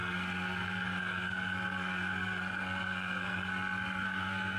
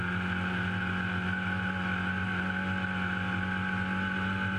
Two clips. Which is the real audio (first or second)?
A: second